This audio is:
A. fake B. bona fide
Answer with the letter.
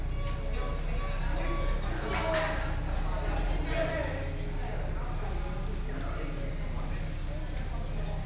B